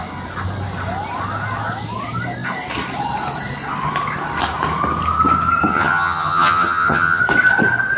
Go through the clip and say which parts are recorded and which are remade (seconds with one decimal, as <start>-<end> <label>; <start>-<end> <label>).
0.0-5.7 recorded; 5.7-7.2 remade; 7.2-8.0 recorded